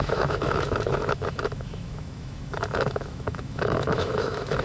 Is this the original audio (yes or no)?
no